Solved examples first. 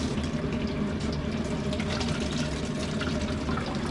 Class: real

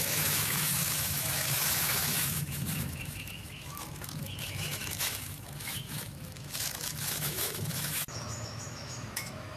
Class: fake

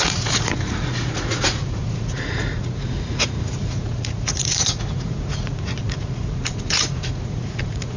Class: fake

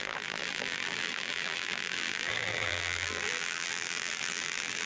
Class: fake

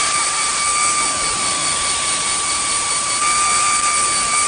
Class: real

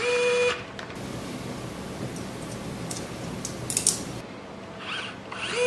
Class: real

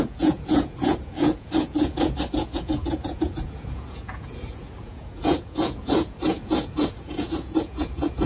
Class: fake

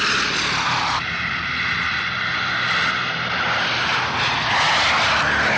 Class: real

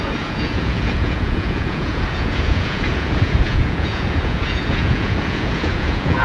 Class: fake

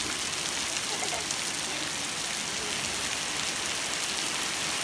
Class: real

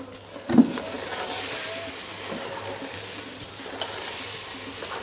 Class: real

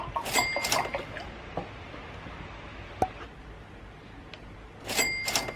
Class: real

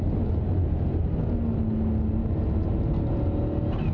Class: real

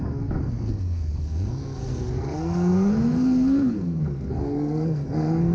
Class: fake